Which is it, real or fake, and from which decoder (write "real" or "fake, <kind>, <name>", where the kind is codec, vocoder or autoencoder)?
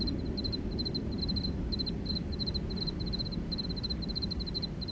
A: real